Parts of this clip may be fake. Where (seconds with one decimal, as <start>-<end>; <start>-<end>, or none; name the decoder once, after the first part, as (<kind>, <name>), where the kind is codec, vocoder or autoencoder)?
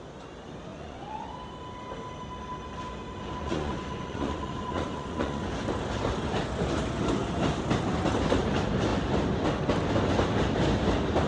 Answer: 0.7-1.2 (vocoder, Vocos); 3.4-5.5